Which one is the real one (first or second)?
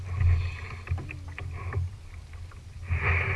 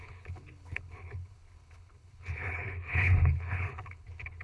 first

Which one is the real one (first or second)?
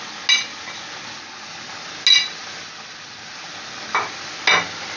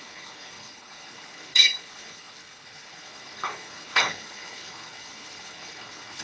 first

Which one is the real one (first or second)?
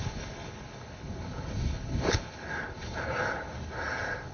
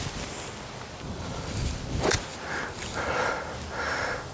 second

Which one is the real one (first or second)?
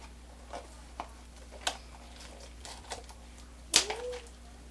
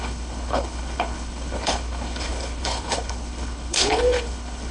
first